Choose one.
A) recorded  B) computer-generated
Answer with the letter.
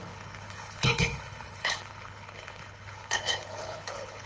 B